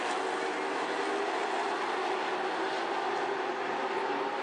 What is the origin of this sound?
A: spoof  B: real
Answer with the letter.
B